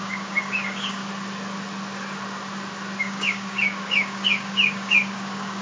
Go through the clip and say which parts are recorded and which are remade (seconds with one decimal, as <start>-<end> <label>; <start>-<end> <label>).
0.0-1.0 remade; 1.0-3.0 recorded; 3.0-5.6 remade